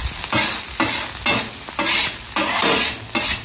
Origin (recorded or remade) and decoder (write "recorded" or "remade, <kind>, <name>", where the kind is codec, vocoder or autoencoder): recorded